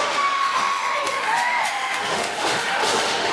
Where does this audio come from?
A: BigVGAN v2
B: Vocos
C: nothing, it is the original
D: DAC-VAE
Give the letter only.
D